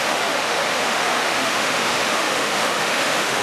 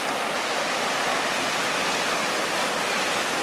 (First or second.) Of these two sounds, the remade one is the first